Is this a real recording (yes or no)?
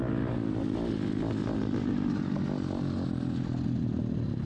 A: yes